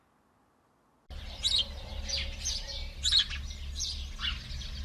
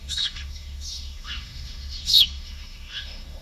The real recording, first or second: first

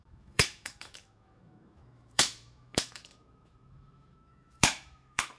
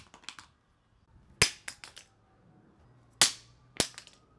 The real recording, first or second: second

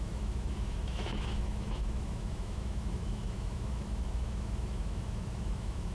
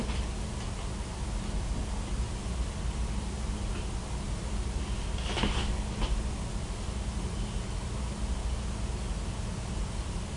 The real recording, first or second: second